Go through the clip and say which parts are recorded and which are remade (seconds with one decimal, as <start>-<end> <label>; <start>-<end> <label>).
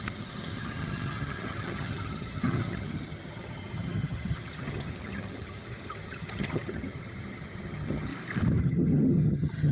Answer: 0.0-8.1 remade; 8.1-8.6 recorded; 8.6-9.7 remade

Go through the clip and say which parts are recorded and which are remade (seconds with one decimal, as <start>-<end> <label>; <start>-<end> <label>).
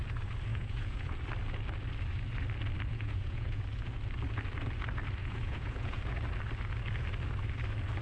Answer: 0.0-0.5 recorded; 0.5-1.1 remade; 1.1-2.9 recorded; 2.9-3.6 remade; 3.6-5.2 recorded; 5.2-6.0 remade; 6.0-8.0 recorded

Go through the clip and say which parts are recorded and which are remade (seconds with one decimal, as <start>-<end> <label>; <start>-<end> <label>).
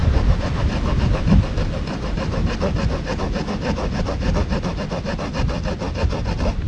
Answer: 0.0-6.7 recorded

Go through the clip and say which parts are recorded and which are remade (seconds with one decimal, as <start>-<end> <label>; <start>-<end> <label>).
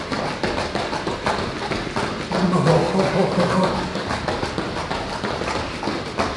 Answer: 0.0-2.8 recorded; 2.8-4.4 remade; 4.4-6.4 recorded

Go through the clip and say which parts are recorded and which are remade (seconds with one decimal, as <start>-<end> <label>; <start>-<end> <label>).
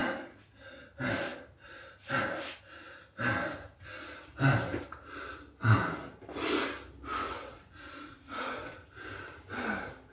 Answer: 0.0-7.1 recorded; 7.1-8.9 remade; 8.9-10.1 recorded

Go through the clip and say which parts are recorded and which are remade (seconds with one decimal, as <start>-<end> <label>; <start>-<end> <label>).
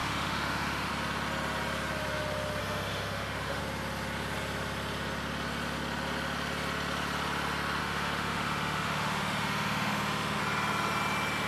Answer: 0.0-0.9 remade; 0.9-2.6 recorded; 2.6-3.6 remade; 3.6-7.8 recorded; 7.8-10.4 remade; 10.4-11.5 recorded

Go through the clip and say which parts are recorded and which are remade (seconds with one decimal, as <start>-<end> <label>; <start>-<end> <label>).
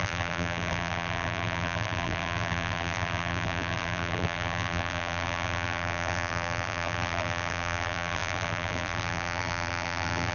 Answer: 0.0-10.3 remade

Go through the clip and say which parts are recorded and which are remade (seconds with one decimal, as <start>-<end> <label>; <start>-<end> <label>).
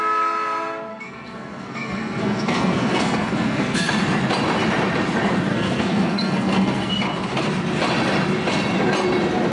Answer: 0.0-0.9 recorded; 0.9-3.9 remade; 3.9-5.5 recorded; 5.5-6.9 remade; 6.9-9.5 recorded